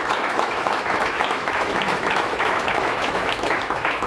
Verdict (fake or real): fake